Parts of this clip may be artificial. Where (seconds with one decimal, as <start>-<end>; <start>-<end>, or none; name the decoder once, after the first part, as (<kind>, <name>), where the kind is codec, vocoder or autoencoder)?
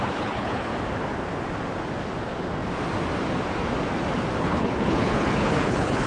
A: 0.0-0.7 (codec, HILCodec); 4.4-6.1